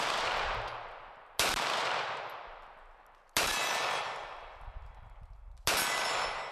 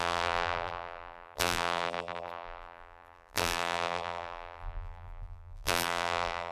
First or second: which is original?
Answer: first